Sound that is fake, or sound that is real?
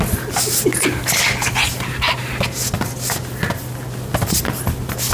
real